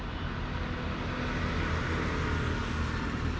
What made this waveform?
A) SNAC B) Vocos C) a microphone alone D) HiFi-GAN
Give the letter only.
C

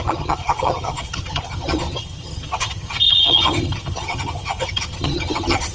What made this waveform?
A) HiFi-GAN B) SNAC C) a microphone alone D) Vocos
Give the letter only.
A